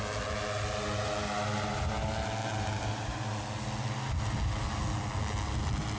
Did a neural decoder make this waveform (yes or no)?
no